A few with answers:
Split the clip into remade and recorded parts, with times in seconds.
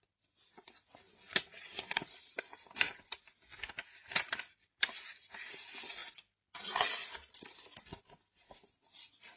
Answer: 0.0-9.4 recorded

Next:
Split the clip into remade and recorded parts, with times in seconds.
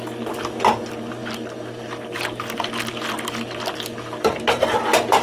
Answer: 0.0-5.2 recorded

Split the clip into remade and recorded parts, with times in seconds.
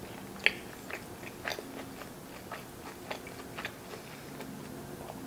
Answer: 0.0-5.3 recorded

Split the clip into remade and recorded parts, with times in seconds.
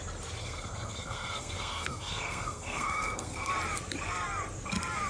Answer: 0.0-0.4 recorded; 0.4-3.5 remade; 3.5-5.1 recorded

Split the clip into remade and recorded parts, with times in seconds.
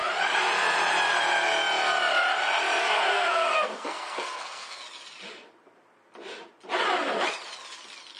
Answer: 0.0-2.8 recorded; 2.8-4.8 remade; 4.8-8.2 recorded